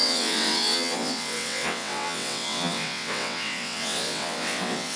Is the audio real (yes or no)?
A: no